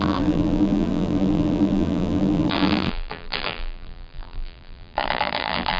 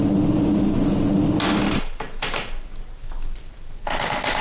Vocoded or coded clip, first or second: first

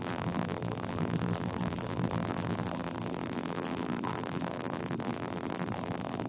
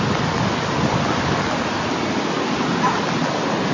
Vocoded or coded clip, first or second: first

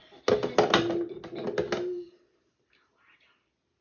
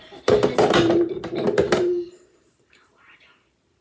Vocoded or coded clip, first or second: second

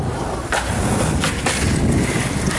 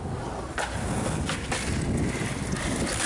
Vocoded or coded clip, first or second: first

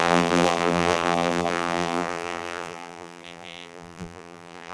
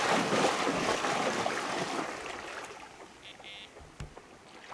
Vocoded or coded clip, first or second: first